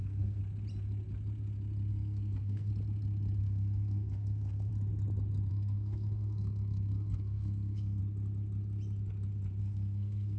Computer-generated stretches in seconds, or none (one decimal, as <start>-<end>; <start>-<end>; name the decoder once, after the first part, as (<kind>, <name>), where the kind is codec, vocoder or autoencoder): 0.0-0.4 (codec, SNAC); 1.9-2.7; 3.4-4.7; 5.5-8.0; 9.6-10.4